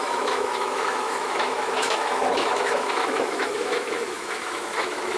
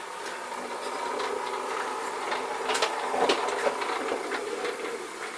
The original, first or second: second